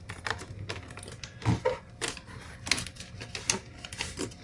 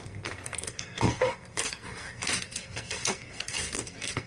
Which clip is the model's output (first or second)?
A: second